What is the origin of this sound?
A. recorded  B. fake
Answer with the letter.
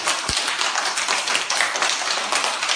A